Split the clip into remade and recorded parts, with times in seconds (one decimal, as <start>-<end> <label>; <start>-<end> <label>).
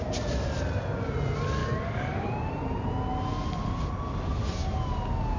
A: 0.0-1.6 recorded; 1.6-2.5 remade; 2.5-5.4 recorded